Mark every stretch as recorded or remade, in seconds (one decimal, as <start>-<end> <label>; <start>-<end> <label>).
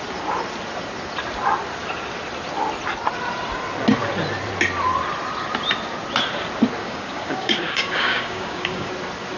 0.0-6.8 recorded; 6.8-8.9 remade; 8.9-9.4 recorded